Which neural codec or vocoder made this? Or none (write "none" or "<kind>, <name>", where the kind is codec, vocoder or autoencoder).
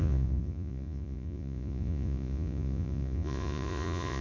vocoder, Vocos